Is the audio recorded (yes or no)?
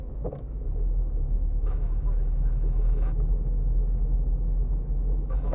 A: no